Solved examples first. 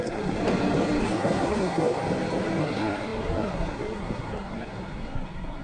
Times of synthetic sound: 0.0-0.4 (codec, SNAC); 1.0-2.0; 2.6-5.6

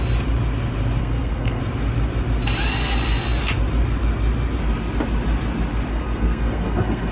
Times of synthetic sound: 1.0-1.6 (codec, SNAC); 5.9-7.1

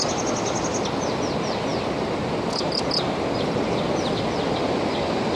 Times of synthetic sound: none

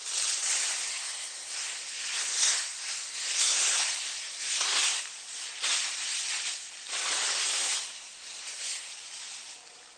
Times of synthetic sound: 0.8-5.0 (codec, SNAC); 7.4-8.9

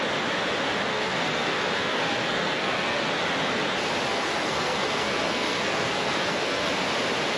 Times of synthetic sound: 0.9-3.1 (codec, SNAC); 4.1-6.7

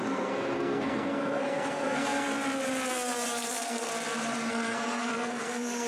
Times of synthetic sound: 0.0-2.3 (codec, SNAC); 2.9-3.9; 4.5-5.9

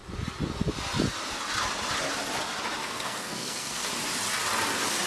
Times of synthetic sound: 2.8-3.9 (codec, SNAC)